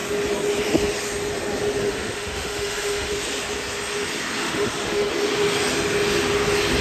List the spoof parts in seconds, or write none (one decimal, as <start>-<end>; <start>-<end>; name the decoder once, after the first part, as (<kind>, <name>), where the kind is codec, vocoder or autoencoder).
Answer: 1.8-3.1 (autoencoder, DAC-VAE); 4.4-5.1